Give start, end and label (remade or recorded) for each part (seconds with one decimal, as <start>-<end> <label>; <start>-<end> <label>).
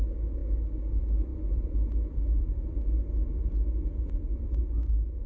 0.0-5.3 recorded